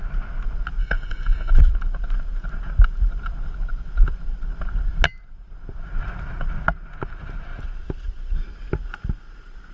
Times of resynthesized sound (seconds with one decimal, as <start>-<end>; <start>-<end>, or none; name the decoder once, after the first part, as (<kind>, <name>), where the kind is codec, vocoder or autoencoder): 0.8-1.5 (codec, SNAC)